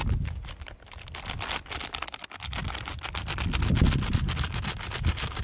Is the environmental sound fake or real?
real